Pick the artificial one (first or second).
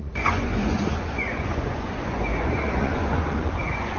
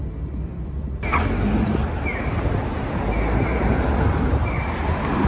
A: first